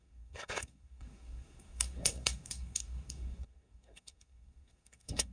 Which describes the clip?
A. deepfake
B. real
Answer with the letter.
A